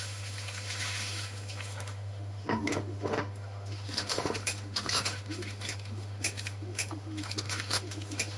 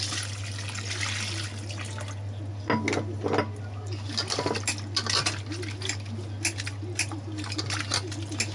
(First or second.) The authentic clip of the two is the second